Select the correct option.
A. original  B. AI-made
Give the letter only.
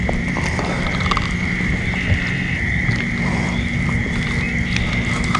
A